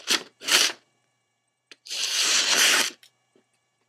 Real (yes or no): no